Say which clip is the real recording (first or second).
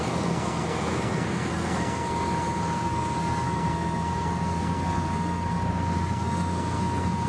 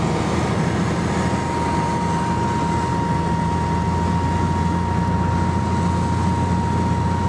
second